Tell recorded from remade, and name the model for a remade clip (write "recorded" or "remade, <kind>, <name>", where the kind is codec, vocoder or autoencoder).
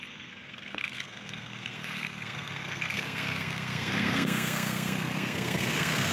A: remade, codec, SNAC